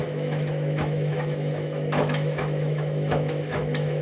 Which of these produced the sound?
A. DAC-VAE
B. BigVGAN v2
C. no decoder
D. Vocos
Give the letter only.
A